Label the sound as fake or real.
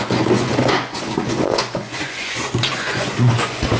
fake